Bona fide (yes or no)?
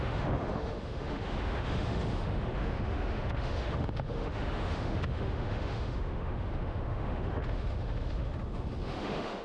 no